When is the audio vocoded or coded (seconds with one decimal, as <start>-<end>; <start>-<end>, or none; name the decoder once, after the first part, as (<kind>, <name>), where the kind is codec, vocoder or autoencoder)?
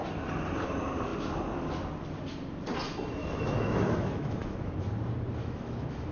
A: 3.2-4.7 (autoencoder, DAC-VAE); 5.4-6.1